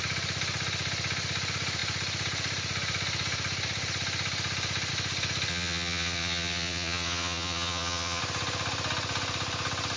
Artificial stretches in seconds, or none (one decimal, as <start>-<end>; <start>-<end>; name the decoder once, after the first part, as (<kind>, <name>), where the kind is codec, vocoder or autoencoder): 5.5-8.2 (vocoder, Vocos)